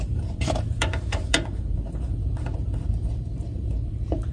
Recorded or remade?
remade